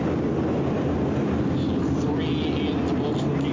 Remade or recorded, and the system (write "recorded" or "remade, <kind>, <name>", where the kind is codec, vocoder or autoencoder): recorded